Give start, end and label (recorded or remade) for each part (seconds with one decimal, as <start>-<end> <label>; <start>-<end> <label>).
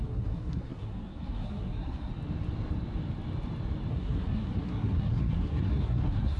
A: 0.0-2.1 remade; 2.1-3.9 recorded; 3.9-6.4 remade